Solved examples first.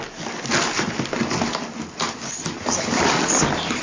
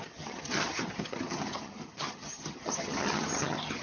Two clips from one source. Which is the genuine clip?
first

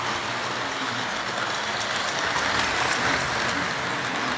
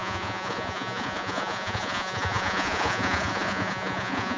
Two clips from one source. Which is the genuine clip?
first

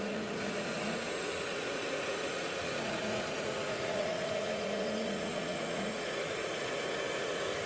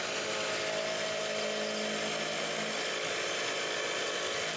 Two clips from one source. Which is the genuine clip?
second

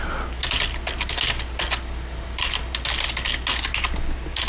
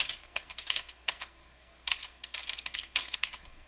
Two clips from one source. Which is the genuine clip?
first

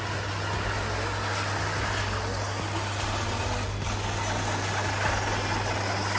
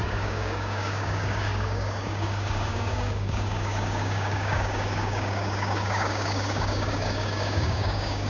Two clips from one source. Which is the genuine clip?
first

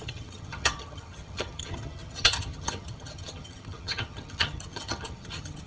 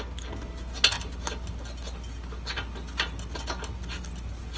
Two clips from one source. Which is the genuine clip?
second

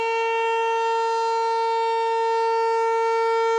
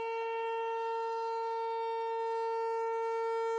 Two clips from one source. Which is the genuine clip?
first